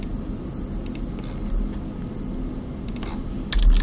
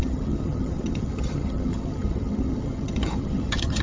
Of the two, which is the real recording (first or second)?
first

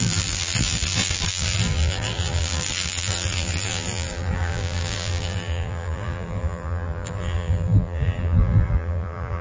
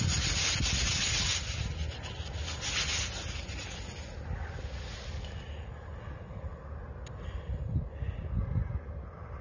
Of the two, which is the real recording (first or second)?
second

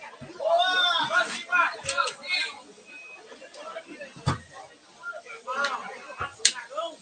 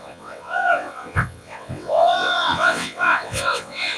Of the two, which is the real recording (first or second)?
first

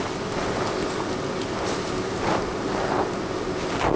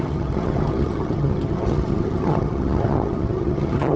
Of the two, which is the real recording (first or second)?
first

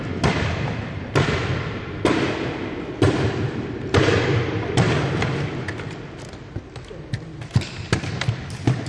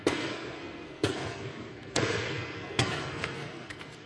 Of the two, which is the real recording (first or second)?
first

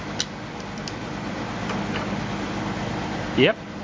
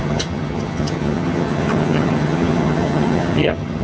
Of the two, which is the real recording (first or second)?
first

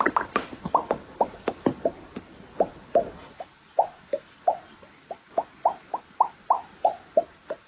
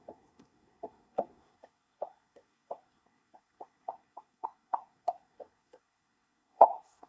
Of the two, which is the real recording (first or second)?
first